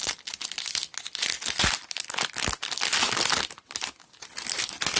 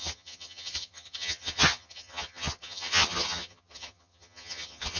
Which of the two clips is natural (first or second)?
first